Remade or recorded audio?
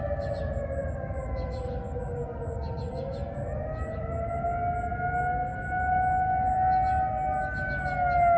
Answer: recorded